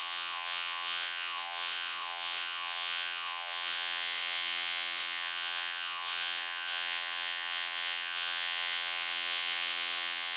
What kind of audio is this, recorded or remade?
remade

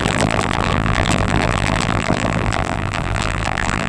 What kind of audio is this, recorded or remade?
remade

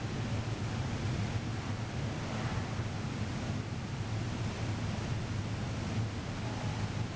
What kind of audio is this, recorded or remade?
recorded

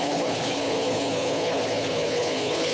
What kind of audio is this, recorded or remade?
remade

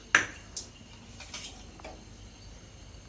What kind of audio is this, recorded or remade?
recorded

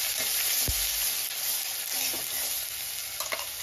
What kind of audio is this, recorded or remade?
recorded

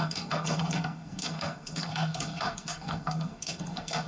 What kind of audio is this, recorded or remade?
remade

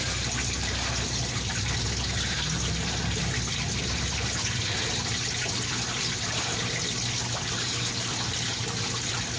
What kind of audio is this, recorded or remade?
recorded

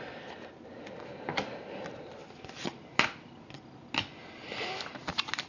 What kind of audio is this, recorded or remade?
recorded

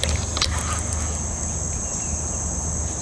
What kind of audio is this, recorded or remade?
recorded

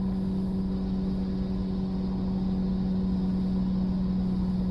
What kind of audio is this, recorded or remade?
recorded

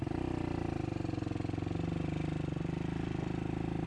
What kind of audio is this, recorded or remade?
recorded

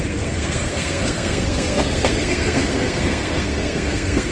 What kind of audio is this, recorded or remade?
remade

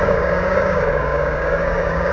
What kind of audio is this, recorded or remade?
remade